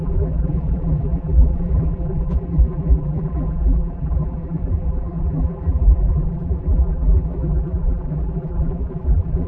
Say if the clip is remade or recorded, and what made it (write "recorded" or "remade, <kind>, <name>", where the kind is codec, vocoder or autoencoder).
remade, vocoder, BigVGAN v2